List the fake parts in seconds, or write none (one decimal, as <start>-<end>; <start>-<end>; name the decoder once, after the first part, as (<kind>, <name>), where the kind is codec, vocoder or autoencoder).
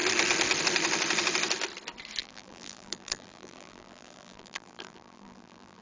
2.2-5.8 (vocoder, BigVGAN v2)